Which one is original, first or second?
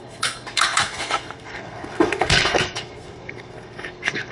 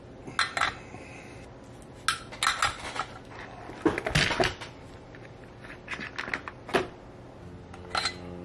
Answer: second